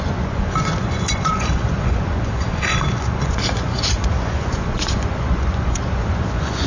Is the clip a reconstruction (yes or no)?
yes